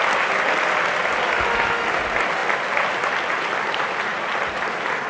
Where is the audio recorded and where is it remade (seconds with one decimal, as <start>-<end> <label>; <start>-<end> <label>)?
0.0-5.1 recorded